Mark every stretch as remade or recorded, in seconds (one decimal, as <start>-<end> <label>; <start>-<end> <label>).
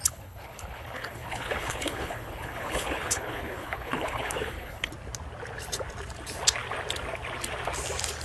0.0-4.9 remade; 4.9-8.2 recorded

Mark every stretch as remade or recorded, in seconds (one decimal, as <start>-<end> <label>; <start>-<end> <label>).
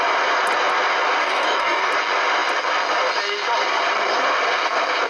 0.0-1.2 recorded; 1.2-1.9 remade; 1.9-5.1 recorded